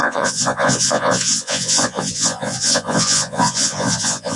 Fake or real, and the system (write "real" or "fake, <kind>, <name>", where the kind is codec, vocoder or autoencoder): fake, vocoder, Vocos